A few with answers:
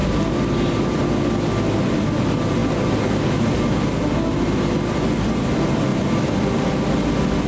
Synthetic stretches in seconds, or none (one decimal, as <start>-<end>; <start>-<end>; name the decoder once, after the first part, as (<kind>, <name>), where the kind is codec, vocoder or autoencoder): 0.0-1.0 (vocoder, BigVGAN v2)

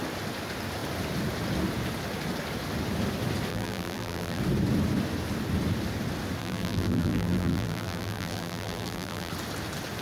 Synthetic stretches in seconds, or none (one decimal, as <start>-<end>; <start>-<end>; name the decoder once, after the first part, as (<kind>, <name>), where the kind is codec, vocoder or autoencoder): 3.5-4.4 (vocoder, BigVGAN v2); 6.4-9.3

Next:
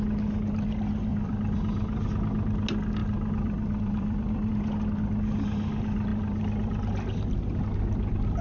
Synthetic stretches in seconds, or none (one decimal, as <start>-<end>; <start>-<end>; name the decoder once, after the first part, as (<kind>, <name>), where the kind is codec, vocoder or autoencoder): 1.1-2.1 (vocoder, BigVGAN v2); 3.0-4.5

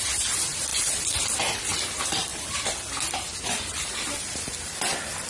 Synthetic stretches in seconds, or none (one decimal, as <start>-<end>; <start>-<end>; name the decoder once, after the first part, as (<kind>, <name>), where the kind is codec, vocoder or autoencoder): 0.7-1.4 (vocoder, BigVGAN v2); 2.3-4.2

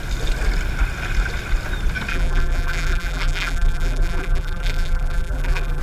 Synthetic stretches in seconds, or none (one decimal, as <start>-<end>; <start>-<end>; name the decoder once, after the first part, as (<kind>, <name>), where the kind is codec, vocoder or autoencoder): 2.1-5.8 (vocoder, BigVGAN v2)